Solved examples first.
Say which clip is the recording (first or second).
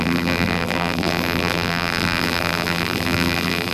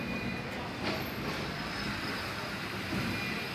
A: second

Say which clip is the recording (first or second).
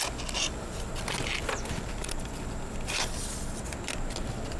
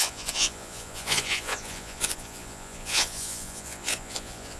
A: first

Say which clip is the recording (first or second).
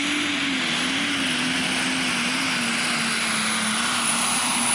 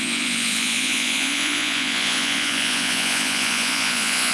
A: first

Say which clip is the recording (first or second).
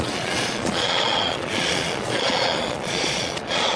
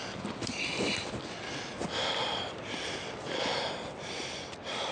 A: second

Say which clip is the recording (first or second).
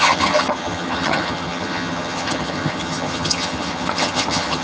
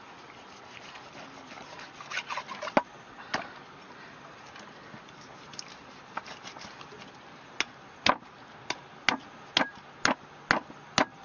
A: second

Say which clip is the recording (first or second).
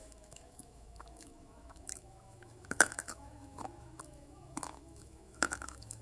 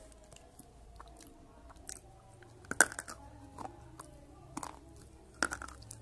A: second